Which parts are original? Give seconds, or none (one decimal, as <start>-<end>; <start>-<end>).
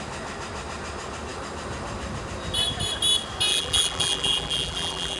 0.0-3.5